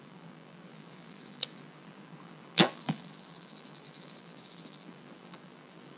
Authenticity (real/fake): fake